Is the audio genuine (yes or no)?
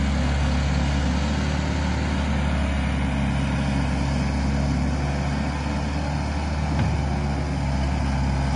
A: yes